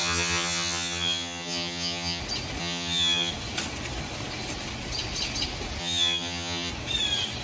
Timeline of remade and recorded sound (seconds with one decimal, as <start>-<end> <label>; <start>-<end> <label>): 0.0-2.2 remade; 2.2-2.6 recorded; 2.6-3.3 remade; 3.3-5.8 recorded; 5.8-6.7 remade; 6.7-7.4 recorded